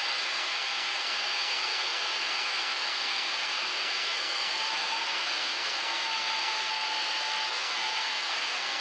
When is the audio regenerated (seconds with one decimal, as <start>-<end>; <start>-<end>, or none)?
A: 0.0-8.8